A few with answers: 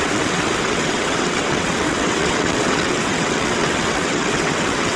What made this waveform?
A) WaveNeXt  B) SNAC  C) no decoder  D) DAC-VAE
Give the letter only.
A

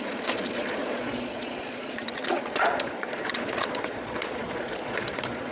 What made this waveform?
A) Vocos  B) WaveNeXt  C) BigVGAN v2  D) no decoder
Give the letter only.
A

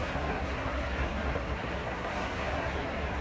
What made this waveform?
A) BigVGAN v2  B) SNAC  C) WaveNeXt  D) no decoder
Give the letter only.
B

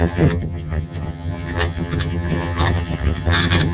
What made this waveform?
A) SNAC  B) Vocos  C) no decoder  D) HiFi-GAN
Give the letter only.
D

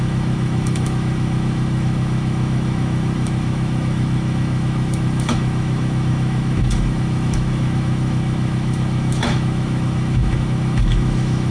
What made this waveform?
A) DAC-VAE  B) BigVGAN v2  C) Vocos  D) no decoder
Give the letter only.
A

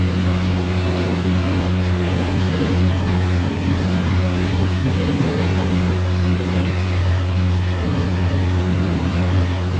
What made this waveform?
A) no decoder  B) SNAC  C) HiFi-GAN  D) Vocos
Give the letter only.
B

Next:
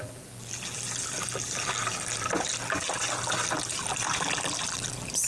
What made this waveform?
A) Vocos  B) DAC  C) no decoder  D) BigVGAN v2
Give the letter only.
D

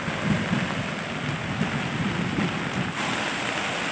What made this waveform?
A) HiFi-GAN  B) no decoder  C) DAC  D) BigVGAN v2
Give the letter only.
B